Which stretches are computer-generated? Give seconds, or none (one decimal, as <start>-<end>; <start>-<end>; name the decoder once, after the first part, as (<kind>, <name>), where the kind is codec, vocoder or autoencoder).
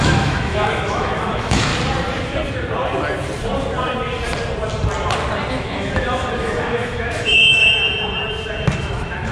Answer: 0.0-1.7 (autoencoder, DAC-VAE); 5.5-7.6; 8.8-9.3